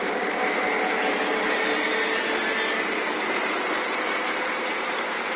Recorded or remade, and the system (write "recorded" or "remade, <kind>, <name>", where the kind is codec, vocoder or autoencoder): recorded